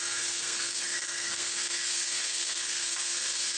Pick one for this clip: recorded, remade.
remade